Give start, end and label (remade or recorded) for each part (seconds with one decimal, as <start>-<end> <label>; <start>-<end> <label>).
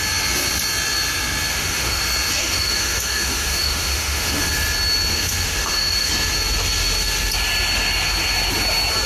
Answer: 0.0-1.5 recorded; 1.5-2.0 remade; 2.0-2.4 recorded; 2.4-4.4 remade; 4.4-5.1 recorded; 5.1-6.1 remade; 6.1-9.1 recorded